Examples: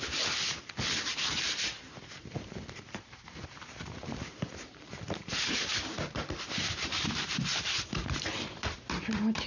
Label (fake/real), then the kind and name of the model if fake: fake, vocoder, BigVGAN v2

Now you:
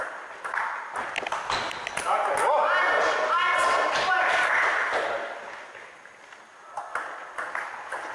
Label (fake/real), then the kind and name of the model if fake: real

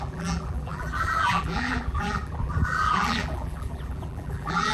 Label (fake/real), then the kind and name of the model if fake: fake, vocoder, BigVGAN v2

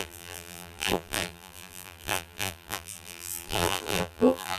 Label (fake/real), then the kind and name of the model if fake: fake, vocoder, BigVGAN v2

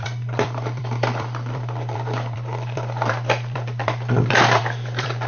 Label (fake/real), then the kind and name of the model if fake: fake, vocoder, BigVGAN v2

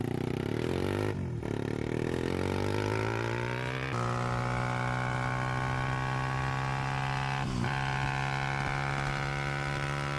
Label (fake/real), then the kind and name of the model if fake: real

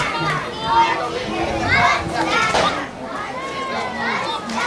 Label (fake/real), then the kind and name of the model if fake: real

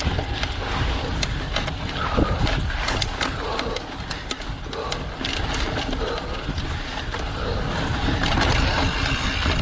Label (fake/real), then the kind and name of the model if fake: real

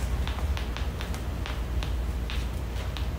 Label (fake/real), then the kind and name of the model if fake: real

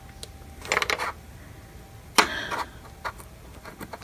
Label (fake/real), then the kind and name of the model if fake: real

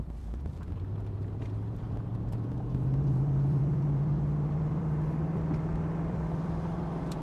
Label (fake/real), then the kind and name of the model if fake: fake, vocoder, BigVGAN v2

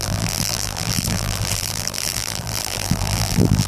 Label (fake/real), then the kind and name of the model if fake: fake, vocoder, BigVGAN v2